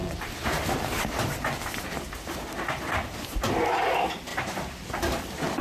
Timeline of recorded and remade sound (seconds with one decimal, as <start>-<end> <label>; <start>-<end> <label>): 0.0-3.4 remade; 3.4-4.3 recorded; 4.3-5.6 remade